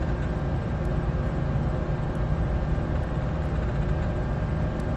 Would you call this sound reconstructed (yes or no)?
no